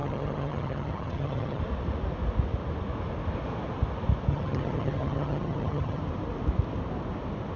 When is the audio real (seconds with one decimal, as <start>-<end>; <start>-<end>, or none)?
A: 1.6-4.3; 6.0-7.6